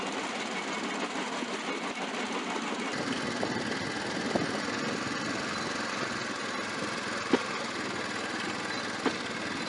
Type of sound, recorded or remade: recorded